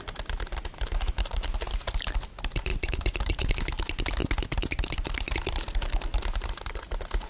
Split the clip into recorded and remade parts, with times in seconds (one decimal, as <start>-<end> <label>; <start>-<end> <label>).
0.0-2.7 recorded; 2.7-3.5 remade; 3.5-7.3 recorded